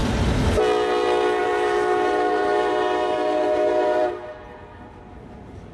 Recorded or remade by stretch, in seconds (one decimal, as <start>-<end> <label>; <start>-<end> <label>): 0.0-1.4 recorded; 1.4-5.7 remade